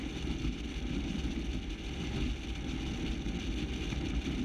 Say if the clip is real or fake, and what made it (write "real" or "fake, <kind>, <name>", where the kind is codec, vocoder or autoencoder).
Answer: real